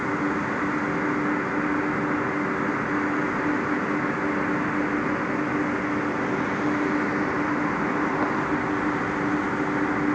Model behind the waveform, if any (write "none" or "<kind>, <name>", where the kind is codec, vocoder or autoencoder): none